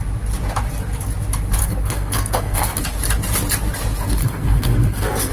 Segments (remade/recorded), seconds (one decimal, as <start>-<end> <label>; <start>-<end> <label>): 0.0-1.6 recorded; 1.6-2.8 remade; 2.8-4.2 recorded; 4.2-5.3 remade